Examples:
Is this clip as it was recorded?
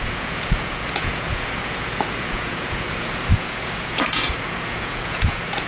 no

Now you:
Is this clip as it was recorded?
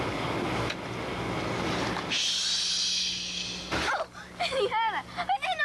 yes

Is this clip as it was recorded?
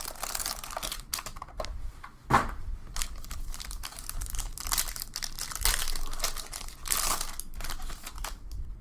yes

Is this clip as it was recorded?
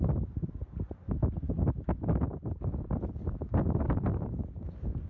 yes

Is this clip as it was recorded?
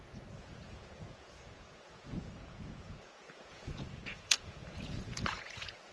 no